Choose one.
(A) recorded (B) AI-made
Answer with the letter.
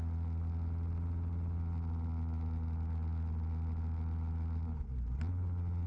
A